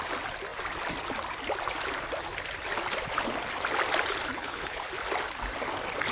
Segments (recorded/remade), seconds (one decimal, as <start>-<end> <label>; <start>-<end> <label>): 0.0-4.4 recorded; 4.4-4.9 remade; 4.9-6.1 recorded